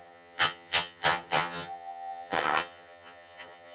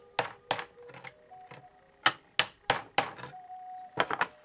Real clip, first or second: second